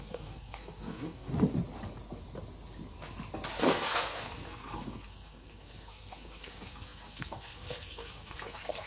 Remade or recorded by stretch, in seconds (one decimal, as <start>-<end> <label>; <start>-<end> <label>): 0.0-1.3 remade; 1.3-3.6 recorded; 3.6-8.9 remade